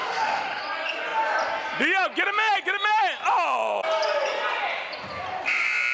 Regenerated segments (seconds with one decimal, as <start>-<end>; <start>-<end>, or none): 0.0-0.6